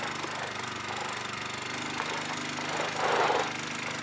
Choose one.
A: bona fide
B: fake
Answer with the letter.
A